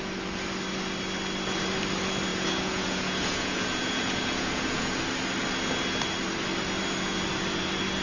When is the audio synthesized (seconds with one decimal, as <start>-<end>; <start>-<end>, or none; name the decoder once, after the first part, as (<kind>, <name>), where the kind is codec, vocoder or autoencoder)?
2.3-5.0 (vocoder, Vocos)